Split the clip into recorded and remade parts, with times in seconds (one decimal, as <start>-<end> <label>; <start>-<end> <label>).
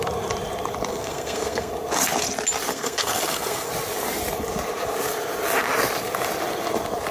0.0-0.9 recorded; 0.9-1.7 remade; 1.7-2.7 recorded; 2.7-3.7 remade; 3.7-7.1 recorded